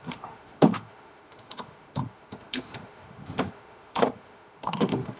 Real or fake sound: fake